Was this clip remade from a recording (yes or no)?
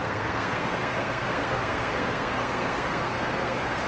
yes